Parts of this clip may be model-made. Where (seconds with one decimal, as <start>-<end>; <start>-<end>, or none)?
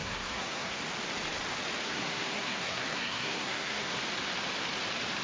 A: 0.0-0.8; 1.8-4.0